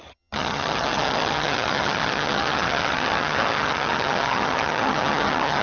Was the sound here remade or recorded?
remade